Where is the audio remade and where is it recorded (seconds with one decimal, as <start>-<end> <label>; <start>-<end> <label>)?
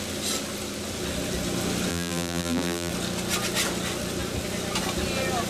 0.0-1.9 recorded; 1.9-2.9 remade; 2.9-5.5 recorded